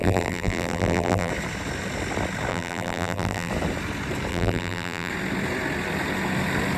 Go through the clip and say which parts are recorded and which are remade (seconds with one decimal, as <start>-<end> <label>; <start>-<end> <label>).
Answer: 0.0-1.3 remade; 1.3-2.5 recorded; 2.5-3.5 remade; 3.5-4.3 recorded; 4.3-5.1 remade; 5.1-6.8 recorded